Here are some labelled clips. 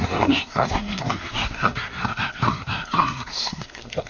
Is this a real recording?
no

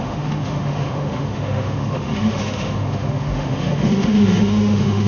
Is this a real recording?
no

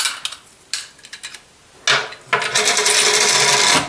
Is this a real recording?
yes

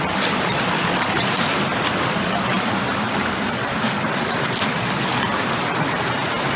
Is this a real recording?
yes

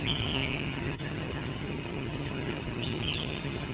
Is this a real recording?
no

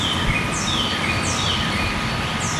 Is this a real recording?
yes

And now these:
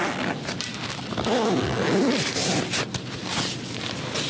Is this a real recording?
yes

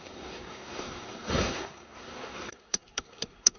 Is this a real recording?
no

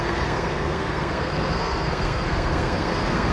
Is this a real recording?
no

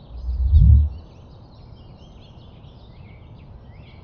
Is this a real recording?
yes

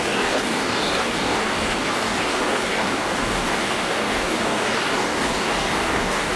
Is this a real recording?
no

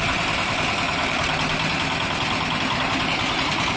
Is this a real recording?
yes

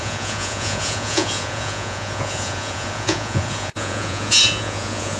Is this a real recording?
no